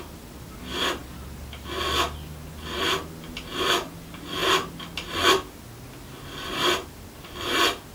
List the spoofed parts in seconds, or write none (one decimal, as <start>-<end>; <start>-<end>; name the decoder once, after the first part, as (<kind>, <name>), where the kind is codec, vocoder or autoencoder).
none